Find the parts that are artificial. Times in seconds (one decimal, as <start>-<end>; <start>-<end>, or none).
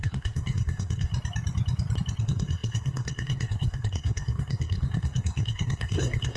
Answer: 0.0-1.1; 2.2-6.4